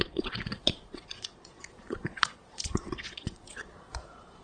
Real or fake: fake